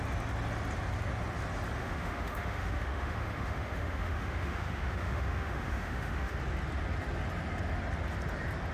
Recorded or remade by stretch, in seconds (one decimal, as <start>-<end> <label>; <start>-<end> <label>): 0.0-1.8 recorded; 1.8-6.4 remade; 6.4-8.7 recorded

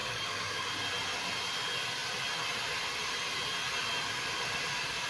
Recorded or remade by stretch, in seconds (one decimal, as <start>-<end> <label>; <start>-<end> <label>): 0.0-0.5 remade; 0.5-5.1 recorded

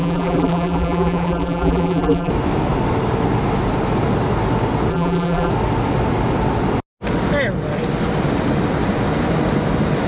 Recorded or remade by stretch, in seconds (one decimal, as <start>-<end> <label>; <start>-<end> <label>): 0.0-2.3 remade; 2.3-4.9 recorded; 4.9-5.5 remade; 5.5-10.1 recorded

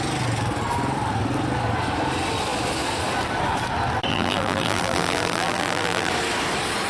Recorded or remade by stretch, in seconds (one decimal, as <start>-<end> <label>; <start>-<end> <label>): 0.0-4.1 recorded; 4.1-6.1 remade; 6.1-6.9 recorded

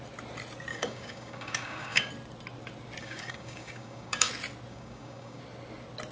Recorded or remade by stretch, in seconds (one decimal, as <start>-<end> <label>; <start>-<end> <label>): 0.0-0.7 recorded; 0.7-2.1 remade; 2.1-3.0 recorded; 3.0-4.3 remade; 4.3-4.7 recorded; 4.7-5.4 remade; 5.4-6.1 recorded

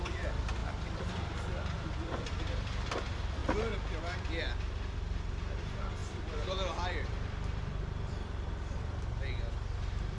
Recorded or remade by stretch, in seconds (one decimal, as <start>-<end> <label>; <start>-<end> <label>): 0.0-3.4 remade; 3.4-4.0 recorded; 4.0-10.2 remade

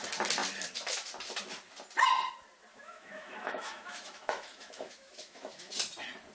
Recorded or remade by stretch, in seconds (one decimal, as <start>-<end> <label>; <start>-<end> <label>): 0.0-2.7 recorded; 2.7-5.7 remade; 5.7-6.3 recorded

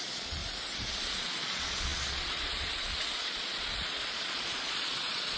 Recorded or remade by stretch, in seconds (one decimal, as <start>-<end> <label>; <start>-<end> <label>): 0.0-0.4 remade; 0.4-0.9 recorded; 0.9-5.4 remade